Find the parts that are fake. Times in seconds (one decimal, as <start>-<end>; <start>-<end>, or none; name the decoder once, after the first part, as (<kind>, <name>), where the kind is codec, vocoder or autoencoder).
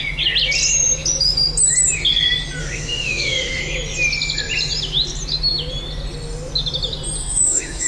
2.6-3.6 (autoencoder, DAC-VAE); 7.2-7.9